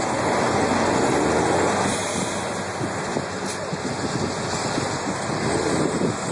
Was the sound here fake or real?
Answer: real